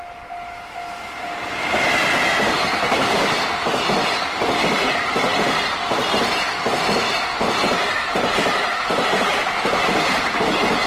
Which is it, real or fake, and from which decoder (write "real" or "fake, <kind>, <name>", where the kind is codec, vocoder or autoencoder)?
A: real